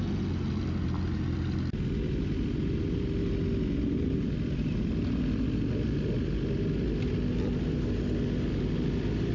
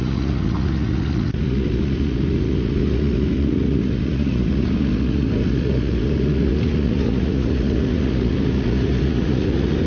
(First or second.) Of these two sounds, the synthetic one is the second